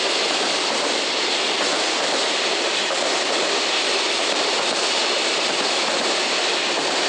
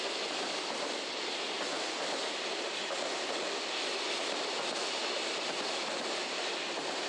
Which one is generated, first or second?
first